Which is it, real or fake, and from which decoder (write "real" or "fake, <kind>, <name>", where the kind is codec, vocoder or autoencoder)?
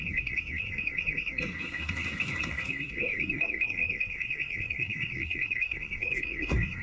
fake, codec, SNAC